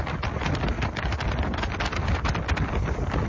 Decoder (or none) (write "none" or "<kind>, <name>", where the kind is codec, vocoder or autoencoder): vocoder, BigVGAN v2